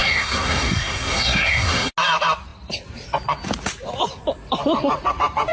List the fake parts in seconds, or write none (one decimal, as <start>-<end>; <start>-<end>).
0.0-1.9